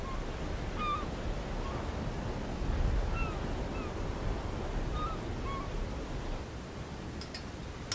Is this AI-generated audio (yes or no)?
no